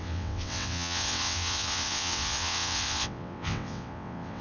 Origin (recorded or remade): remade